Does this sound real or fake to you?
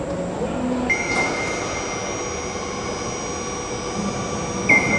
real